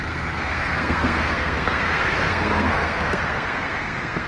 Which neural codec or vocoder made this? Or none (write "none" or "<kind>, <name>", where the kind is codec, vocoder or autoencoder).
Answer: codec, SNAC